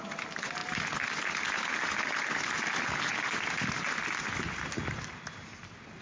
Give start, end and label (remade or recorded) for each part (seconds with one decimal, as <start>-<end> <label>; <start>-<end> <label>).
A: 0.0-6.0 recorded